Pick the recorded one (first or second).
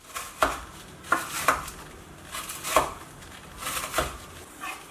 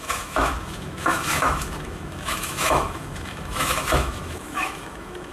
first